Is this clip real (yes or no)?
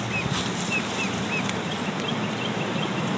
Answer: yes